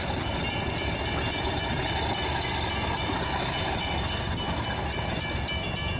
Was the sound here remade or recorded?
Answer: remade